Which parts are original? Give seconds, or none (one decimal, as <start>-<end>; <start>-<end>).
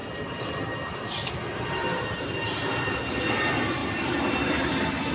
0.0-5.1